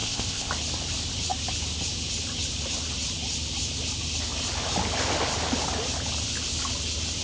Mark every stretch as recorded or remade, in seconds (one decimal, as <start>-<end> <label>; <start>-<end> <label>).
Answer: 0.0-0.5 remade; 0.5-7.2 recorded